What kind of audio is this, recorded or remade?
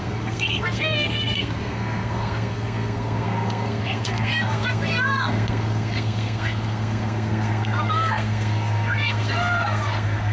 remade